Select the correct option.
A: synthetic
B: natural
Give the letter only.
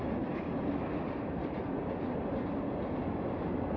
B